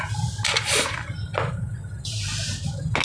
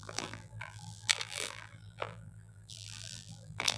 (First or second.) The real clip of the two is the first